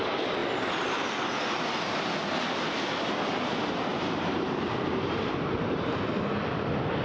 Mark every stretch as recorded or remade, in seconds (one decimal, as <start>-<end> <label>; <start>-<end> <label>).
0.0-3.9 recorded; 3.9-6.0 remade; 6.0-7.0 recorded